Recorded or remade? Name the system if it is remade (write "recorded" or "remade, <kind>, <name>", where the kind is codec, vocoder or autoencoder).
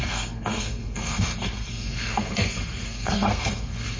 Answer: remade, codec, SNAC